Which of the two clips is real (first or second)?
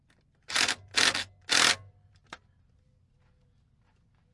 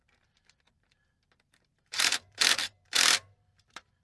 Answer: first